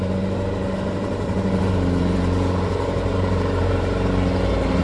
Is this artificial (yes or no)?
yes